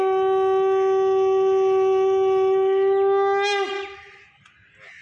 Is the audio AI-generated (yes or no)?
no